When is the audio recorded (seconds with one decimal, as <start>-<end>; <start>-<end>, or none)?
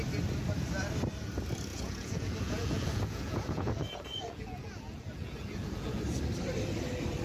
0.0-1.7; 6.0-7.2